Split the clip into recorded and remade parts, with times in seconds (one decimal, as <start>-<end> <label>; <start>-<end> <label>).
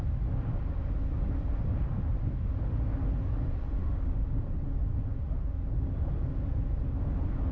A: 0.0-3.8 recorded; 3.8-4.4 remade; 4.4-7.5 recorded